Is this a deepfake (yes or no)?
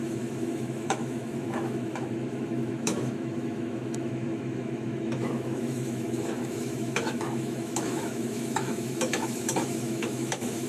yes